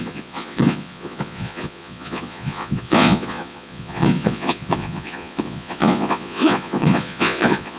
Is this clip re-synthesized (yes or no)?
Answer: yes